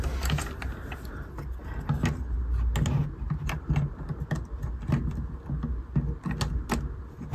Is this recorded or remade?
recorded